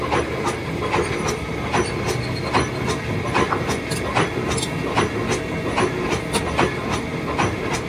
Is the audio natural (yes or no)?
yes